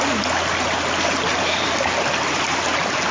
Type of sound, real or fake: real